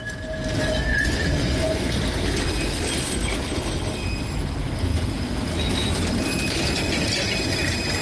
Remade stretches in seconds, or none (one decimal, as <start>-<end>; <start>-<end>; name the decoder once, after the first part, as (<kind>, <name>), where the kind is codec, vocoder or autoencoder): 0.9-2.0 (vocoder, Vocos)